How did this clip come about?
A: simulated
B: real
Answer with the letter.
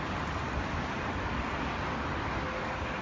B